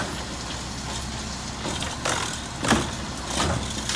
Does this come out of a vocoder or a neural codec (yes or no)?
no